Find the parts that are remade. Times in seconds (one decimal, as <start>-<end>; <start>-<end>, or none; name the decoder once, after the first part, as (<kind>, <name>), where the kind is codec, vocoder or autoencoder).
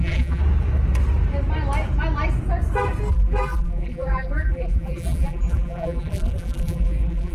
0.0-0.4 (vocoder, BigVGAN v2); 3.1-7.3